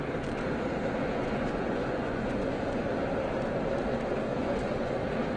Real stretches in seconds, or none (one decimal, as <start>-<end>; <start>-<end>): 0.0-1.0; 2.8-4.3; 4.9-5.4